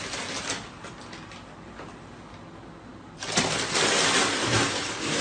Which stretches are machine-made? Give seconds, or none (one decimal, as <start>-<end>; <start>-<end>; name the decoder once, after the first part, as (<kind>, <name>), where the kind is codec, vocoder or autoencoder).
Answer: none